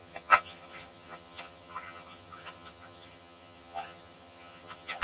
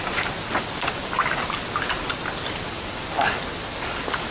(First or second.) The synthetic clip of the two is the first